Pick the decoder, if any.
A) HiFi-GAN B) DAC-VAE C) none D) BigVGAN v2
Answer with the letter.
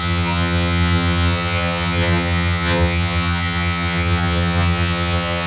A